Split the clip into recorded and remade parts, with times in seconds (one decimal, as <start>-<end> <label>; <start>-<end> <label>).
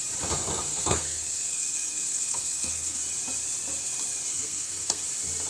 0.0-0.7 recorded; 0.7-3.0 remade; 3.0-4.3 recorded; 4.3-5.0 remade; 5.0-5.5 recorded